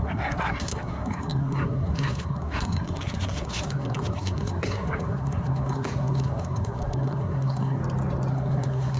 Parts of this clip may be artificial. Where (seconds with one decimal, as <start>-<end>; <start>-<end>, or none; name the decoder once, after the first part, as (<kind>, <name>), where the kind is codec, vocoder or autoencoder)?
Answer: 0.0-7.8 (codec, SNAC); 8.3-9.0